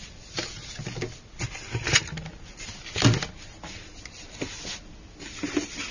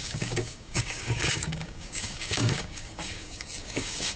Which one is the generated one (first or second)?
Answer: second